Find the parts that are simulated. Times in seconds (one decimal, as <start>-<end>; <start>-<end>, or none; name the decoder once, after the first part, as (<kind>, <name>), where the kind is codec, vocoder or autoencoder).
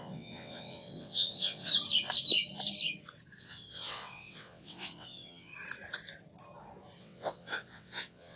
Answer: 0.0-1.7 (vocoder, WaveNeXt); 3.4-5.5; 7.0-8.4